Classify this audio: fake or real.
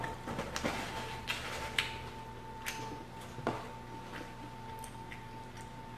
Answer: real